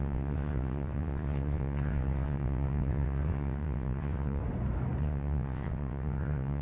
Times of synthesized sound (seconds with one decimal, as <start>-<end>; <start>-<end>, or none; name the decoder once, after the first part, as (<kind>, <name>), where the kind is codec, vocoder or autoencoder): 0.0-4.4 (vocoder, WaveNeXt); 5.0-6.6